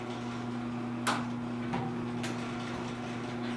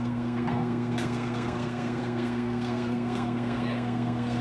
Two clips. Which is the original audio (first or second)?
first